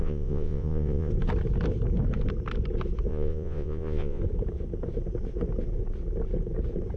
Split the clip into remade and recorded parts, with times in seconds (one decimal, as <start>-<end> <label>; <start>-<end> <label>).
0.0-1.1 remade; 1.1-3.1 recorded; 3.1-4.2 remade; 4.2-7.0 recorded